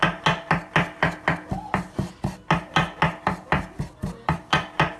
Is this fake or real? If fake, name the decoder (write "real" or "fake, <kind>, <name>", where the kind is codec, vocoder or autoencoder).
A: real